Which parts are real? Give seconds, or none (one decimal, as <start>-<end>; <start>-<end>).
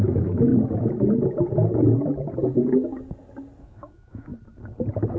0.5-3.6; 4.3-5.2